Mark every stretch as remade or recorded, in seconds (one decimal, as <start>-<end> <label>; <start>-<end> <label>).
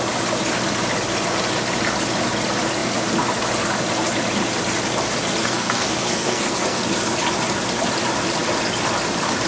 0.0-5.4 recorded; 5.4-6.8 remade; 6.8-9.5 recorded